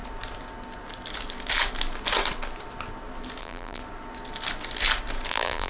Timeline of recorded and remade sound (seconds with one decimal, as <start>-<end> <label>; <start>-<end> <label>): 0.0-3.4 recorded; 3.4-3.8 remade; 3.8-5.3 recorded; 5.3-5.7 remade